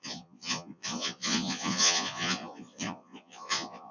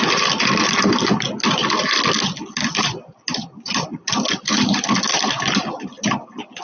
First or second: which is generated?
first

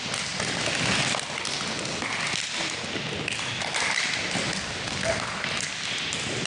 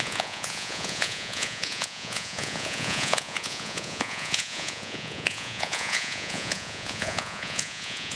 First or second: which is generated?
second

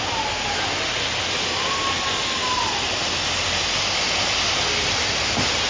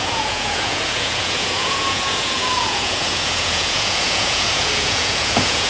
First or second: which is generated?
second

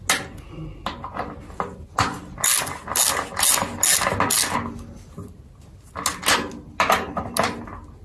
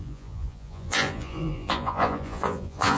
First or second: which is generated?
second